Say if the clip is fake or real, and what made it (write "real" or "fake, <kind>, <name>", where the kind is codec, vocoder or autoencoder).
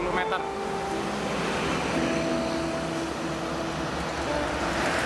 real